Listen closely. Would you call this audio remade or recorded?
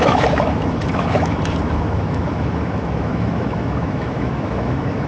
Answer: remade